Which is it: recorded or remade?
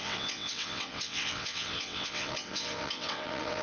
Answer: remade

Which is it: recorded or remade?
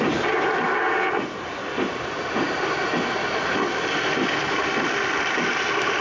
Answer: recorded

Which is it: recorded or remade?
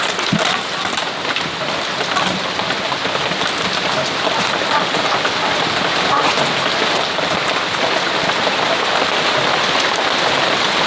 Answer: recorded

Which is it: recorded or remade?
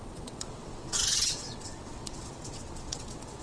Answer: remade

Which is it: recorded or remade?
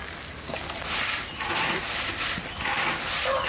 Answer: recorded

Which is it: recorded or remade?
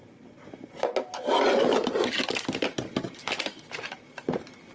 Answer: recorded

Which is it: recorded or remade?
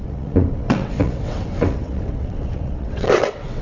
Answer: remade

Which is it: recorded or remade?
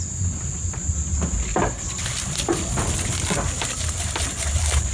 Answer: recorded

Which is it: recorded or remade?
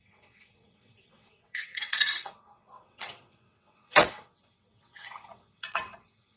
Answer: remade